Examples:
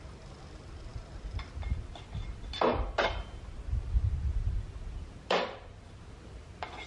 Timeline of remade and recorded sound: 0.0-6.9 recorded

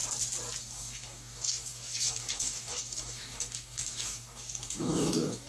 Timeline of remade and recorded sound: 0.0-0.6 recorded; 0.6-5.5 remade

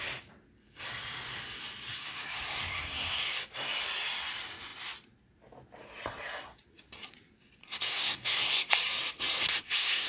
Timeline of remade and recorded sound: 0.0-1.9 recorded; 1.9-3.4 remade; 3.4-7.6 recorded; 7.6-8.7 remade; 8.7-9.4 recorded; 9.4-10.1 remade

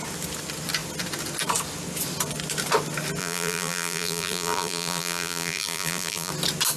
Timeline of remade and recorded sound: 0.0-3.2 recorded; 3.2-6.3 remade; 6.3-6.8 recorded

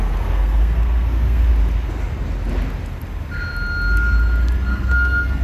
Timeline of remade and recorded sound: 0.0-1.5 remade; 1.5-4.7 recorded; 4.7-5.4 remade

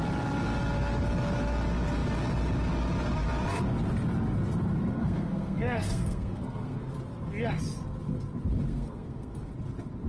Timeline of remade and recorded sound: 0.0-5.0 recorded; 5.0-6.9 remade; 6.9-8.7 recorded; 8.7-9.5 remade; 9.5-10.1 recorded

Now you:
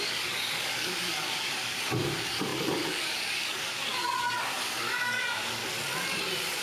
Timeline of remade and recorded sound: 0.0-5.6 remade; 5.6-6.6 recorded

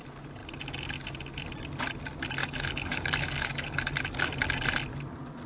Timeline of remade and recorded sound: 0.0-2.4 recorded; 2.4-3.9 remade; 3.9-5.5 recorded